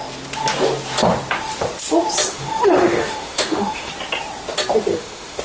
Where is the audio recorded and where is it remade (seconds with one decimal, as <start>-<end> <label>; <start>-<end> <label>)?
0.0-2.3 recorded; 2.3-3.9 remade; 3.9-4.9 recorded; 4.9-5.4 remade